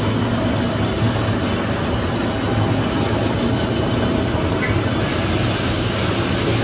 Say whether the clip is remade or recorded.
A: recorded